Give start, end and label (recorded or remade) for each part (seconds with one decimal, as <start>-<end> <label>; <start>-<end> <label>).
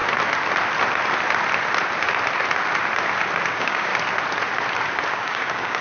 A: 0.0-3.5 recorded; 3.5-3.9 remade; 3.9-5.1 recorded; 5.1-5.8 remade